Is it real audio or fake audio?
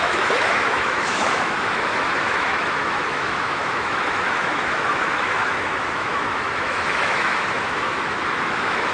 fake